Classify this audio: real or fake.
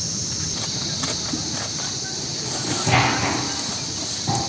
real